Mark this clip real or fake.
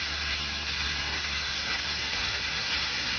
fake